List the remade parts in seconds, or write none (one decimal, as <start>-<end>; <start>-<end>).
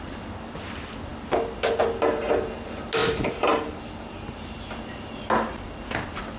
3.0-4.7